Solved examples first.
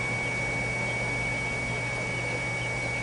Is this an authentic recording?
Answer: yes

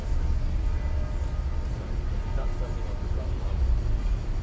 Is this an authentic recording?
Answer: yes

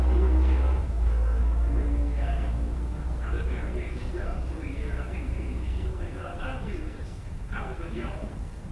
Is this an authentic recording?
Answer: no